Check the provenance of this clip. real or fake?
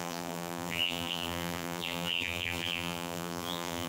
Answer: fake